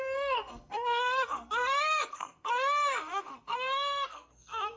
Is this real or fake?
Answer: fake